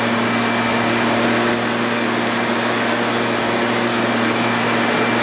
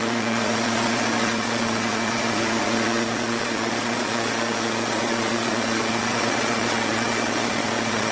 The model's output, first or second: second